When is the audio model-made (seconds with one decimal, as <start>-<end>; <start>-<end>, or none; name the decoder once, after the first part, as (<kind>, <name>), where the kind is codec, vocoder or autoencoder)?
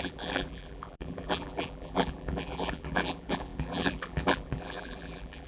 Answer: 0.0-5.5 (vocoder, BigVGAN v2)